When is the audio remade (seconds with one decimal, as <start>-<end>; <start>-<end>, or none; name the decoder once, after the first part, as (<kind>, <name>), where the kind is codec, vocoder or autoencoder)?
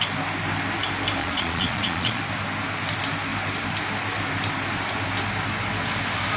1.2-2.2 (vocoder, Vocos)